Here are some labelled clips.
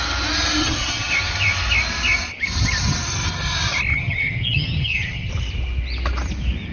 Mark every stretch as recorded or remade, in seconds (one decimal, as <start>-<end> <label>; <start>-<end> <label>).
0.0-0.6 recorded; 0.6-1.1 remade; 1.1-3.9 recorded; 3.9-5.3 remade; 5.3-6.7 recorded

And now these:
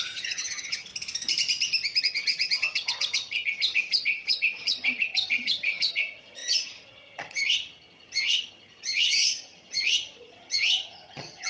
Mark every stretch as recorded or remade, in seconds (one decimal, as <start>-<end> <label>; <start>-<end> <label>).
0.0-0.9 remade; 0.9-2.0 recorded; 2.0-11.5 remade

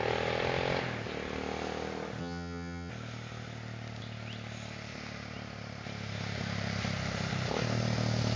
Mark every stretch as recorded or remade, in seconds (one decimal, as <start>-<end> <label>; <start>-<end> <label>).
0.0-2.2 recorded; 2.2-2.9 remade; 2.9-8.4 recorded

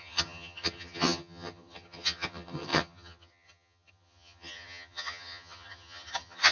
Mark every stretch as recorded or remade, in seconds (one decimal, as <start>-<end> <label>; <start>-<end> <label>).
0.0-6.5 remade

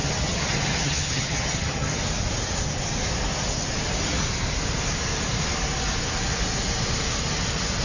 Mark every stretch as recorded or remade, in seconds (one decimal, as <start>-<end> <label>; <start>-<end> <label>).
0.0-2.0 remade; 2.0-7.8 recorded

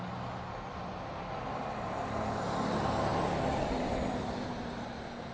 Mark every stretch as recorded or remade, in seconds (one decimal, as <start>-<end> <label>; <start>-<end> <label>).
0.0-5.3 recorded